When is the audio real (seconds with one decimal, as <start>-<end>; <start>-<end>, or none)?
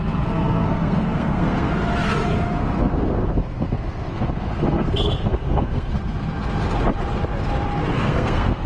1.7-2.6; 6.0-7.9